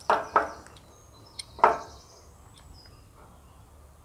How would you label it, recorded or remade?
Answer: recorded